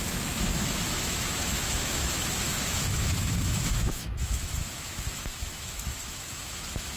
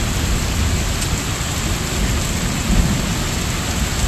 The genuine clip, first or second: second